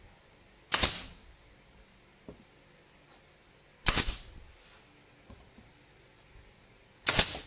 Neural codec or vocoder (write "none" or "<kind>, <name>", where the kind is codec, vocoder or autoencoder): none